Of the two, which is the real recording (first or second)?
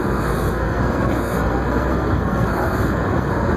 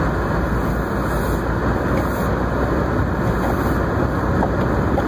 second